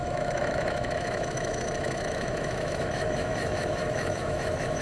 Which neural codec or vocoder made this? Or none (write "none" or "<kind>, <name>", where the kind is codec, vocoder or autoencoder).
autoencoder, DAC-VAE